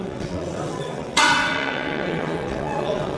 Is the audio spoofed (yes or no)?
yes